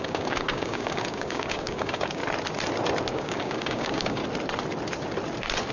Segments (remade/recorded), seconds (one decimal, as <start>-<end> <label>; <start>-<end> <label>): 0.0-2.2 remade; 2.2-3.1 recorded; 3.1-4.2 remade; 4.2-5.7 recorded